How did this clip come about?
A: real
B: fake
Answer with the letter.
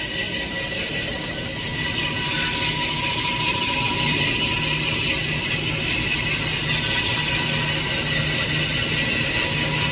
A